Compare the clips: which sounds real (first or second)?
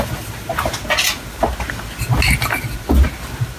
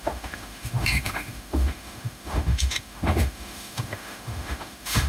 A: first